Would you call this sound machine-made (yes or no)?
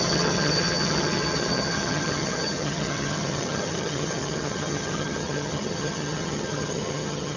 yes